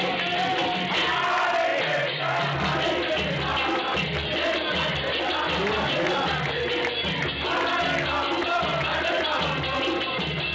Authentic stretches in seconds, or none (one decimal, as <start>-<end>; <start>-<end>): 0.0-10.5